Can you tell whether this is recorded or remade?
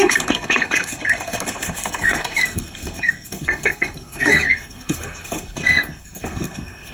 remade